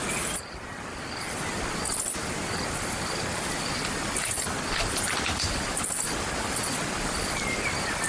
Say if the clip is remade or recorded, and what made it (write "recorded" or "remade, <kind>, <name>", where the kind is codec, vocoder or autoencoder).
recorded